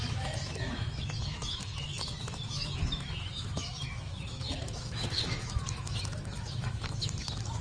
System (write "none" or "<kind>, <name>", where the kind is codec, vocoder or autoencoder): autoencoder, DAC-VAE